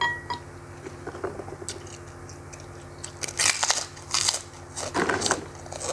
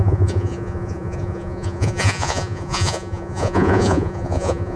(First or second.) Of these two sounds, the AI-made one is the second